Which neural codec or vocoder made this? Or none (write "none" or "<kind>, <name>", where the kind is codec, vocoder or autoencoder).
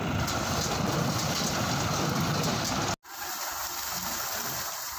none